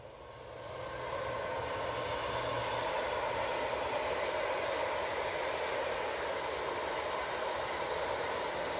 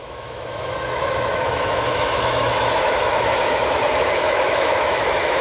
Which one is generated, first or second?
second